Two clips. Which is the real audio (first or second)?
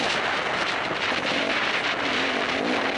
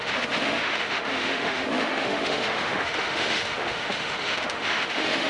first